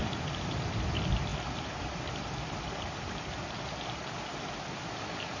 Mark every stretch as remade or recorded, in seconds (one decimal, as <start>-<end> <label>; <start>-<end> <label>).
0.0-5.4 recorded